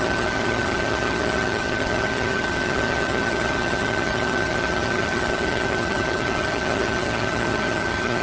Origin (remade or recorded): remade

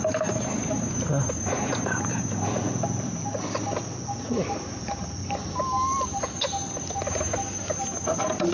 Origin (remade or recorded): recorded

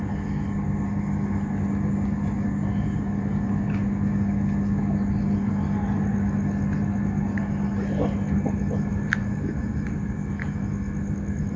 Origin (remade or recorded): recorded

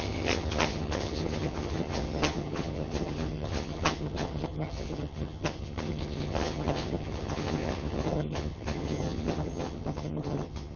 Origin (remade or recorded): remade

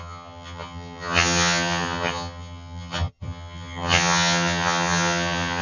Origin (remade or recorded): remade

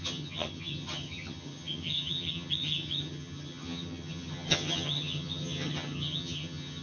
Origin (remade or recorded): remade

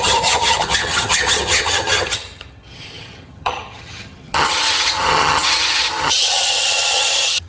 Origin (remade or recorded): remade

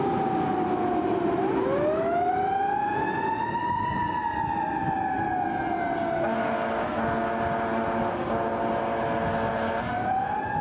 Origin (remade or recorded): recorded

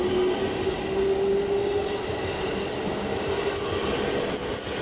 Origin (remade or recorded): recorded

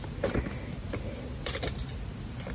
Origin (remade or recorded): recorded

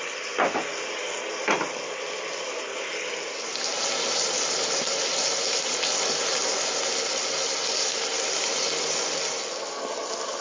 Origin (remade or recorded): recorded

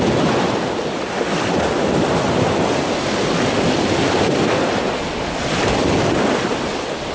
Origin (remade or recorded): recorded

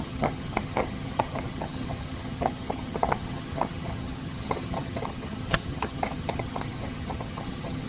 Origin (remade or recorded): remade